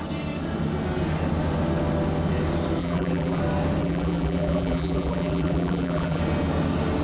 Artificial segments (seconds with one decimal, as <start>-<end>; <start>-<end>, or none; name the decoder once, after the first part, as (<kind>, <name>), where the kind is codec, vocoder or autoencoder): 2.8-3.4 (vocoder, BigVGAN v2); 3.8-6.2